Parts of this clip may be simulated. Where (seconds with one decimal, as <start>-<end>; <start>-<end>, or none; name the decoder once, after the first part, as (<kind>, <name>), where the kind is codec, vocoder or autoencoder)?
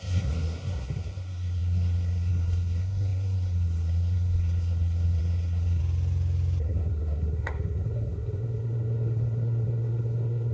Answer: 0.0-5.8 (codec, SNAC); 6.6-10.5